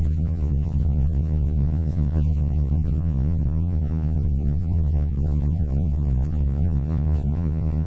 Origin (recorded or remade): remade